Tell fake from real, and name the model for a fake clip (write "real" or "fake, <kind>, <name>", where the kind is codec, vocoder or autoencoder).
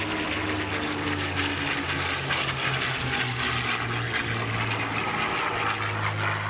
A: real